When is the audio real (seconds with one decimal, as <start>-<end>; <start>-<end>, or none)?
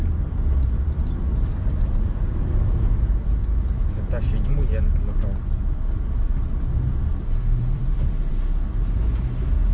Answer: 0.0-1.6; 3.3-7.1; 8.3-9.7